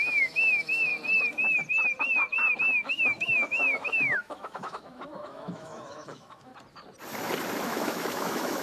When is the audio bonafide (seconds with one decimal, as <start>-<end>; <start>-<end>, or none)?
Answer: 0.9-2.6; 6.5-7.6